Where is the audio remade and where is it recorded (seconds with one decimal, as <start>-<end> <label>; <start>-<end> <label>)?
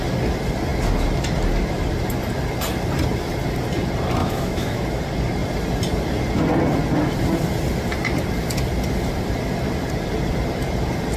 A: 0.0-4.2 recorded; 4.2-5.0 remade; 5.0-11.2 recorded